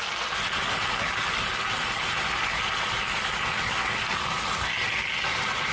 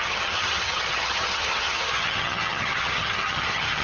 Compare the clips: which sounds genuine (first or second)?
first